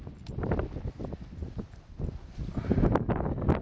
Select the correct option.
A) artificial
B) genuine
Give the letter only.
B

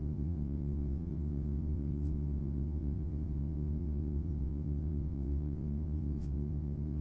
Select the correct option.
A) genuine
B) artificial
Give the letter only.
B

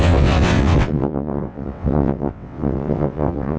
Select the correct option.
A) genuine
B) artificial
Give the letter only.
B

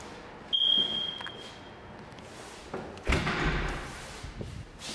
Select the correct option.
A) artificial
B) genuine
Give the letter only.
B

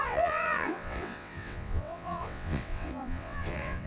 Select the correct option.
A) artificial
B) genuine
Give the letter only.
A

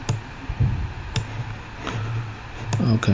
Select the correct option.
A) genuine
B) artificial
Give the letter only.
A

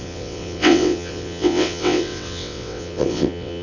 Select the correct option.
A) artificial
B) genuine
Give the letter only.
A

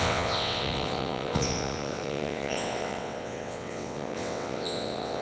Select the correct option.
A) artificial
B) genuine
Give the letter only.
A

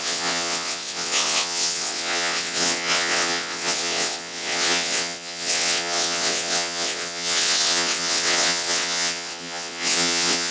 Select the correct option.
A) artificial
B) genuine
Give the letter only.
A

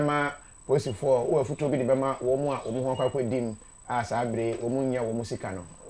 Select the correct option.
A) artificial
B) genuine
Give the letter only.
B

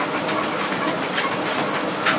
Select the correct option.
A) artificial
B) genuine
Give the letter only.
B